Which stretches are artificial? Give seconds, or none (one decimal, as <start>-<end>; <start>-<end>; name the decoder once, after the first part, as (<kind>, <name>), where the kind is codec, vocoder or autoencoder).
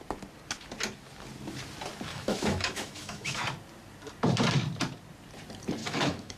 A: 2.1-3.4 (autoencoder, DAC-VAE); 5.8-6.4